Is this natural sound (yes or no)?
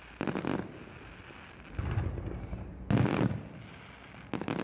yes